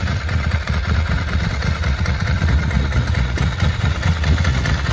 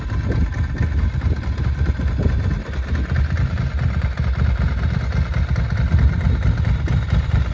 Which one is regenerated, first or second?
first